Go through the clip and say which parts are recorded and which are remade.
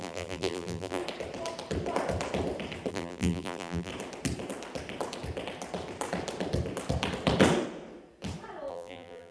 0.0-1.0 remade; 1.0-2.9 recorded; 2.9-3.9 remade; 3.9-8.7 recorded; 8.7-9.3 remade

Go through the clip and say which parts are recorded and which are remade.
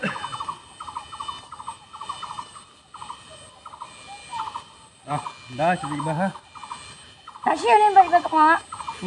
0.0-4.3 recorded; 4.3-5.1 remade; 5.1-9.1 recorded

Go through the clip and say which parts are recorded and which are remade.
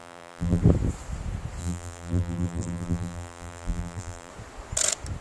0.0-0.6 remade; 0.6-1.6 recorded; 1.6-4.3 remade; 4.3-5.2 recorded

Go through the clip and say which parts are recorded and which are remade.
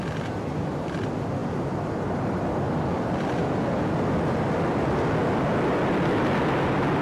0.0-7.0 recorded